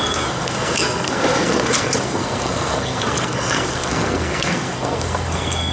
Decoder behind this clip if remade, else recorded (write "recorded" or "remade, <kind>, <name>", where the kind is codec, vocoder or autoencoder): remade, codec, SNAC